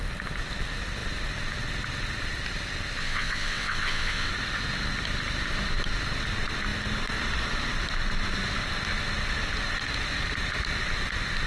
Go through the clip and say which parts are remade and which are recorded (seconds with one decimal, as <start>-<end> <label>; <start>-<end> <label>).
0.0-3.0 recorded; 3.0-4.3 remade; 4.3-11.5 recorded